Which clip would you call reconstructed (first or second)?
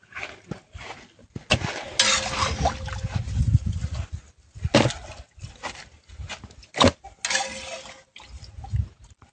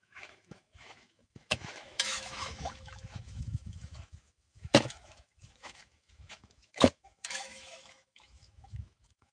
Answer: second